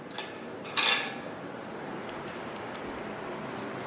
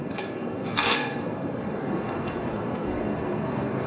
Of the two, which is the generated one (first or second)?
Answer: second